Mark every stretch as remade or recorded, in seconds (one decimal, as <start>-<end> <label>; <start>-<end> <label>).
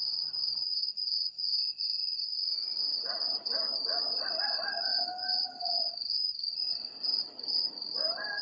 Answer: 0.0-8.4 recorded